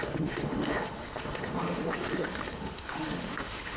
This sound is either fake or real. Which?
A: fake